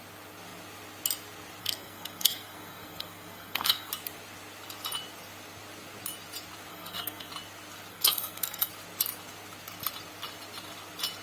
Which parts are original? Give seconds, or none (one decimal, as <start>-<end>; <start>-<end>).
0.0-1.6; 3.9-6.7; 7.3-7.9; 8.7-11.2